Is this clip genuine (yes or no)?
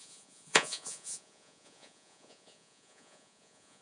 no